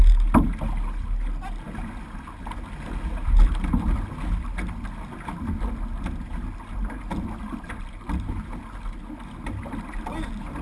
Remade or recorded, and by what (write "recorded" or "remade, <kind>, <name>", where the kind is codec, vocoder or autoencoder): recorded